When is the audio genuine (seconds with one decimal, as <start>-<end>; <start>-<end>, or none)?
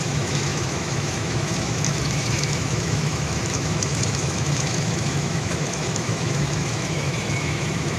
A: none